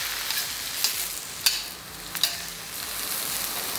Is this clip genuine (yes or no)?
yes